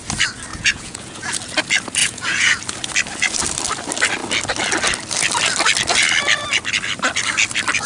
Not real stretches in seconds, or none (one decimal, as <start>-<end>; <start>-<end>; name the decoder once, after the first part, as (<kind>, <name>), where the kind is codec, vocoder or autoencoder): 0.5-1.3 (vocoder, Vocos); 2.0-2.6